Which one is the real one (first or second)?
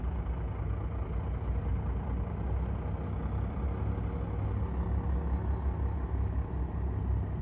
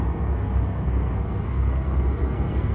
first